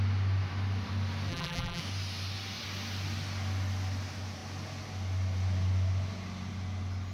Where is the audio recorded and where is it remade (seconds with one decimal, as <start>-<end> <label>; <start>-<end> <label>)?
0.0-1.3 recorded; 1.3-1.8 remade; 1.8-7.1 recorded